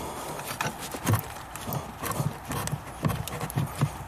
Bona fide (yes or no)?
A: yes